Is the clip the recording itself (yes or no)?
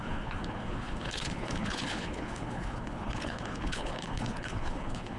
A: no